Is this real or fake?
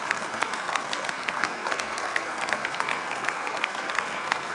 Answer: fake